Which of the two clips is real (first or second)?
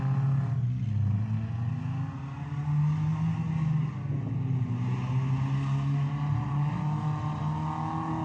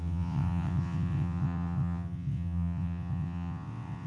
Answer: first